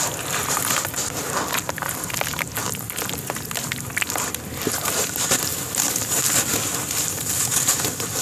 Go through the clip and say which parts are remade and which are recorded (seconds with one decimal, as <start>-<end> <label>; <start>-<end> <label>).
0.0-2.3 remade; 2.3-4.9 recorded; 4.9-8.2 remade